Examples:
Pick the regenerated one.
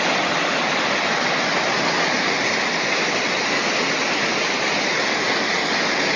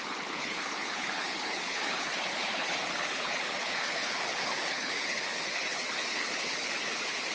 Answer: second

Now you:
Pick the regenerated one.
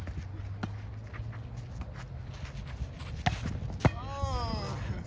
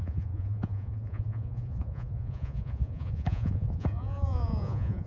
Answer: second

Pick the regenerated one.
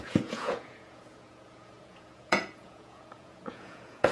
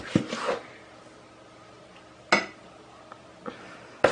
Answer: first